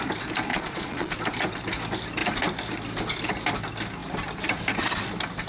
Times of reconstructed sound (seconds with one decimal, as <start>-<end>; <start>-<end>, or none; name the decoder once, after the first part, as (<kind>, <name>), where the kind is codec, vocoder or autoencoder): 0.5-1.1 (vocoder, Vocos)